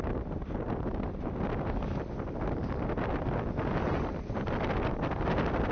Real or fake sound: real